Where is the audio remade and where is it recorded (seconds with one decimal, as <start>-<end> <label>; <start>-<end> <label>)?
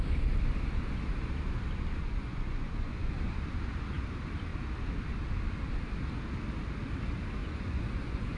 0.0-2.0 recorded; 2.0-3.1 remade; 3.1-7.4 recorded; 7.4-8.4 remade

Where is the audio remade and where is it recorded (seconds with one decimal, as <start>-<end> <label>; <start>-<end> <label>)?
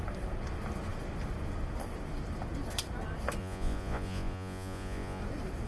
0.0-3.4 recorded; 3.4-5.2 remade; 5.2-5.7 recorded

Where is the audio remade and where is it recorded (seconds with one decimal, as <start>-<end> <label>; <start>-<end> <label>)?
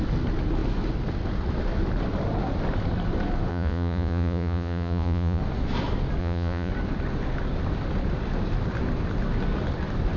0.0-3.5 recorded; 3.5-5.4 remade; 5.4-6.2 recorded; 6.2-6.7 remade; 6.7-10.2 recorded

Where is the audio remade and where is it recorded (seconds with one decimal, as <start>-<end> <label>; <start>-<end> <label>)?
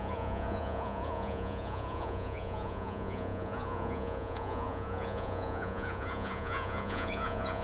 0.0-7.6 remade